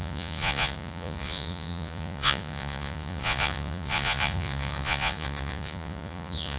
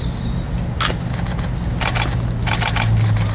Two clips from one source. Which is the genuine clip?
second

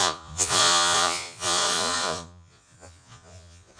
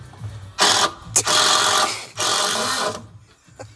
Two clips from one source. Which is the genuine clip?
second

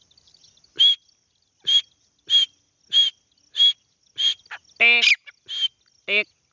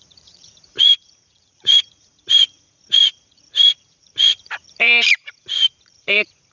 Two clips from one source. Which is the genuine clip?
first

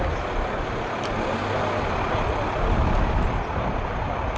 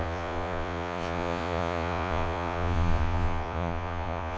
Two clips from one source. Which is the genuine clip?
first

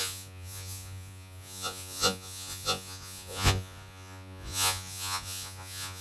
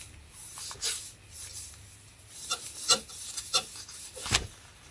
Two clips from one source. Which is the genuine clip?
second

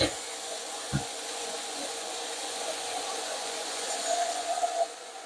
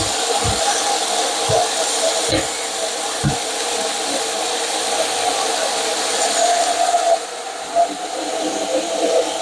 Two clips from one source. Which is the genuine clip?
second